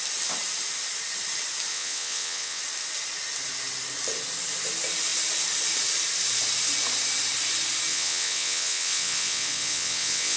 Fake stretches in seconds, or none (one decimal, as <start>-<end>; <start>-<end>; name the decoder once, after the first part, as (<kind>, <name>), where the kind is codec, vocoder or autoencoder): 1.7-2.6 (vocoder, WaveNeXt); 7.9-10.4